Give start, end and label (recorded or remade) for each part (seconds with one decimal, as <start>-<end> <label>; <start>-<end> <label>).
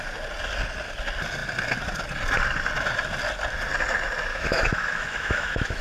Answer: 0.0-4.3 recorded; 4.3-5.8 remade